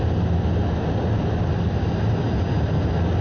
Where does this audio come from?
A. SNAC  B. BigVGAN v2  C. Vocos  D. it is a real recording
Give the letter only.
D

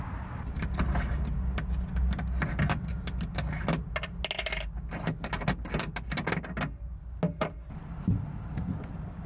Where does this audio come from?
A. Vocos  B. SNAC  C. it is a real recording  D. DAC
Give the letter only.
C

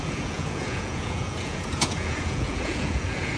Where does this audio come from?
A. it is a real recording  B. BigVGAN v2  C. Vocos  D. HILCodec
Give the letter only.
C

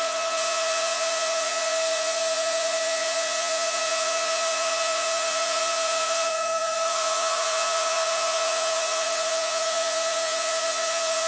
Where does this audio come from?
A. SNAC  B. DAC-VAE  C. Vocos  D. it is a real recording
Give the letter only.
C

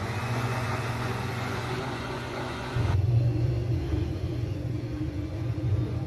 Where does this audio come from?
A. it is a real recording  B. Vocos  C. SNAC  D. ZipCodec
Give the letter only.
B